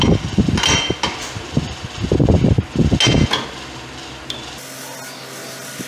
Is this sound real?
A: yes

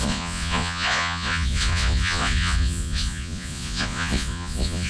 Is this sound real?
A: no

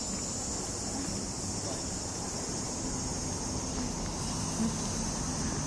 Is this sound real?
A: yes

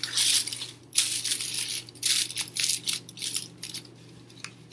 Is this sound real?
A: yes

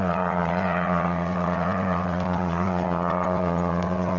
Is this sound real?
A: no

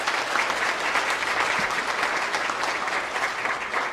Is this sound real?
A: yes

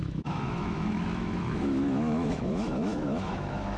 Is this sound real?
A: no